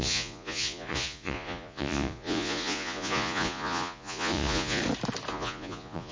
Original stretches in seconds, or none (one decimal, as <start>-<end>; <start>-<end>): 4.8-5.3